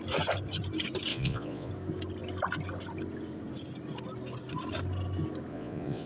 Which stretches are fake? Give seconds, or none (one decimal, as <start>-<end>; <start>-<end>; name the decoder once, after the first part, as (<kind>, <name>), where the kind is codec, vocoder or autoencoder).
1.1-1.7 (vocoder, Vocos); 5.5-6.1